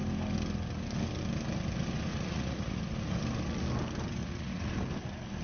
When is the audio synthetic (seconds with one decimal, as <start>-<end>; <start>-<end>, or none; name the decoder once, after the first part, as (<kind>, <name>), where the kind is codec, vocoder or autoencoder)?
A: 2.1-2.8 (vocoder, Vocos); 4.2-4.7